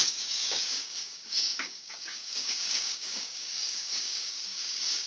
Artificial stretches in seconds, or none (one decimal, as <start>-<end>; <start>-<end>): 0.0-5.1